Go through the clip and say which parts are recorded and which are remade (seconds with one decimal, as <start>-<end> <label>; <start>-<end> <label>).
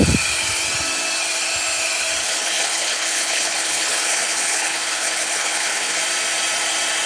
0.0-2.2 recorded; 2.2-6.0 remade; 6.0-7.1 recorded